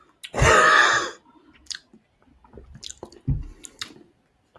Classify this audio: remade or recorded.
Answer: recorded